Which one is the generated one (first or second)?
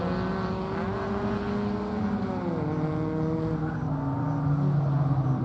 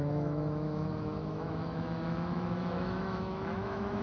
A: second